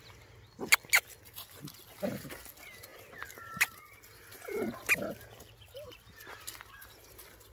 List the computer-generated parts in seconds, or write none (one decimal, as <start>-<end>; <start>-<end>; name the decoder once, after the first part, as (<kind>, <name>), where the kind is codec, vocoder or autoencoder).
none